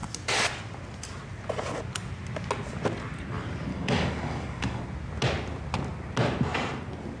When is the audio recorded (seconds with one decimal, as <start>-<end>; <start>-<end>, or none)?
0.0-3.7; 4.8-7.2